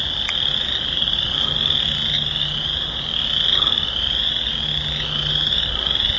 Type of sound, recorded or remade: recorded